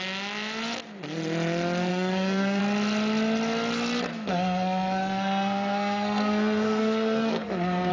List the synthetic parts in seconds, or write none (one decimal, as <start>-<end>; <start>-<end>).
1.9-2.6; 4.1-7.9